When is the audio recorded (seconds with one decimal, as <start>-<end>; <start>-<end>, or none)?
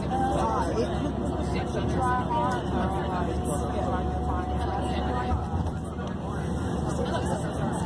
0.0-7.9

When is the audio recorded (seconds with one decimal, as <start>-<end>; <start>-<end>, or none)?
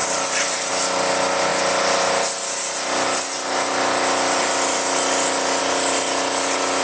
0.7-6.8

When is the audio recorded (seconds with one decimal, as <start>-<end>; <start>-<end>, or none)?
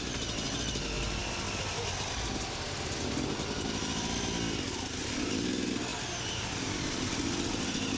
0.0-5.9; 6.7-8.0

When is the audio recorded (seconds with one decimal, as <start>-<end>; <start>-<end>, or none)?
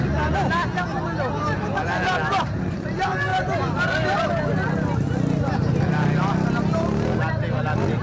0.0-8.0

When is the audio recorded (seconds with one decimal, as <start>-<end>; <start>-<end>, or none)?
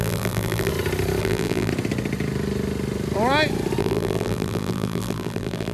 0.7-1.2; 1.7-3.8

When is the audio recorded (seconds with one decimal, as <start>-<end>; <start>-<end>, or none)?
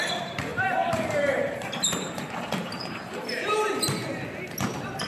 4.0-5.1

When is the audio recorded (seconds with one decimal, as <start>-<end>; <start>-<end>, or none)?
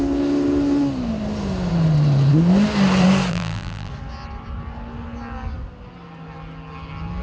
0.0-3.3; 3.9-7.2